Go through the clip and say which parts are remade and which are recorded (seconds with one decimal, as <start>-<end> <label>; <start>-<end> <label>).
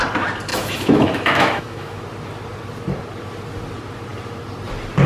0.0-0.5 recorded; 0.5-2.0 remade; 2.0-5.1 recorded